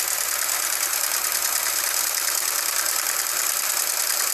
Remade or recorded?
recorded